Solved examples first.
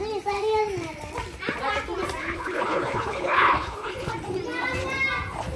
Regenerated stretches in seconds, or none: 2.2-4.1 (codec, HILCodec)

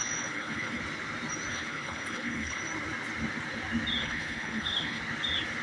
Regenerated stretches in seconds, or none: 0.0-0.8 (codec, HILCodec); 1.5-2.6; 4.0-5.0

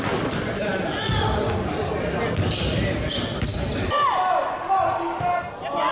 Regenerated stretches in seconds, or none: none